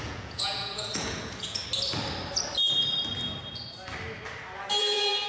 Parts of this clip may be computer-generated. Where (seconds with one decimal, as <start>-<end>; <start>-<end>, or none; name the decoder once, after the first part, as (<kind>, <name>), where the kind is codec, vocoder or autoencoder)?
0.0-1.6 (vocoder, Vocos); 4.8-5.3